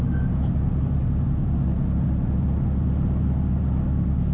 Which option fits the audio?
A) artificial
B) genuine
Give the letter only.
B